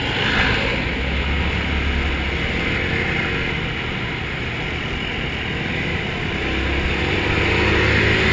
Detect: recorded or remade recorded